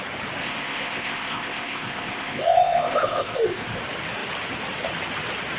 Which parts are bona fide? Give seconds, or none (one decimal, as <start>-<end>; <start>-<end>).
0.0-0.4; 3.8-5.6

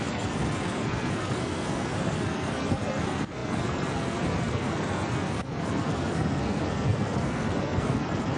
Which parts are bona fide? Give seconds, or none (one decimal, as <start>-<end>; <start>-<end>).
none